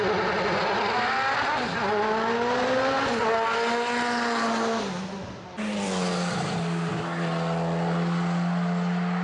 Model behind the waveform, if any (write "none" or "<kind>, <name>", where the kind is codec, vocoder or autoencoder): none